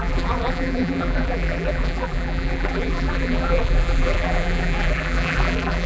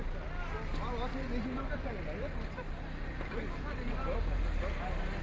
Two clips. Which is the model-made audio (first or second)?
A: first